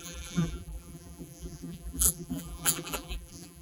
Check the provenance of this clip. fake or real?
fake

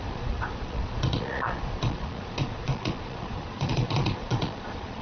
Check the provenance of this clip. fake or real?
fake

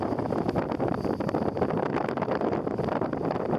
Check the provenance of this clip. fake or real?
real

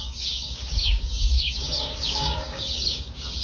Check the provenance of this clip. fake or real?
fake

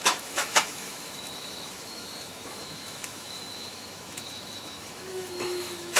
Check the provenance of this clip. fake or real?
fake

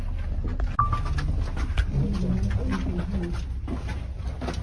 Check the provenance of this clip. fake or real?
real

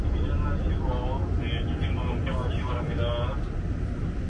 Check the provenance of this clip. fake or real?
real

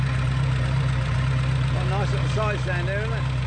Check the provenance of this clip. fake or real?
real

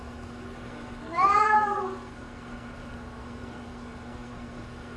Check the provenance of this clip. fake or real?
fake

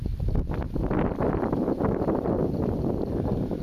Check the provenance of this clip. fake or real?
real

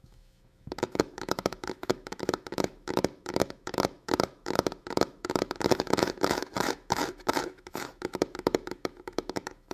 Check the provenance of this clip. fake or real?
fake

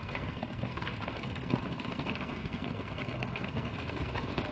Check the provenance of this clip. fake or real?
fake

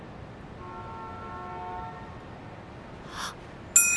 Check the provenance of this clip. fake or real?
real